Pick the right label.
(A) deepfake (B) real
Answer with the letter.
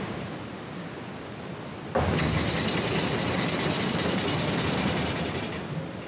B